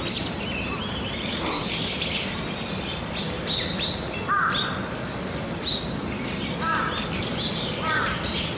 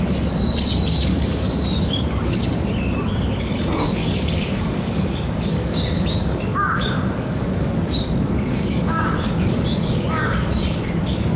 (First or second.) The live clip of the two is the first